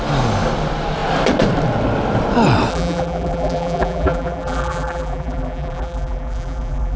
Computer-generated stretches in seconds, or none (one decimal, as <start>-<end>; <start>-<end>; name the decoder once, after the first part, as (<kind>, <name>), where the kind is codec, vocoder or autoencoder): 2.7-7.0 (vocoder, BigVGAN v2)